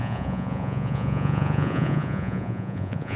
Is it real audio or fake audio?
fake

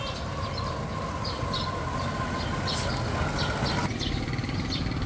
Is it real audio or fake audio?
real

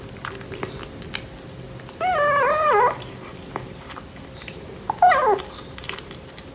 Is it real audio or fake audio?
real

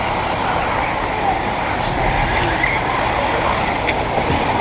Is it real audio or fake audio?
real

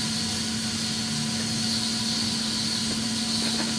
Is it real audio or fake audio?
real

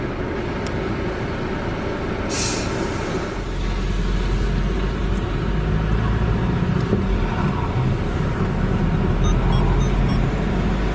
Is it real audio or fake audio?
real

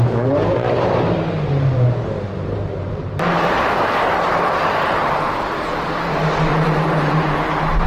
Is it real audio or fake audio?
fake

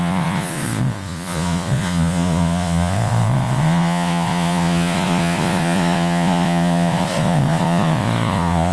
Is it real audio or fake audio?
fake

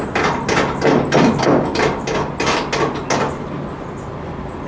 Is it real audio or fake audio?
real